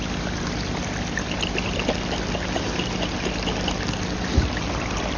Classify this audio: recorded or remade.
recorded